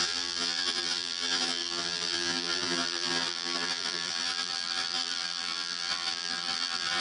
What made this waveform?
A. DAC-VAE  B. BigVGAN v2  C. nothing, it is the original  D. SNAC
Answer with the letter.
B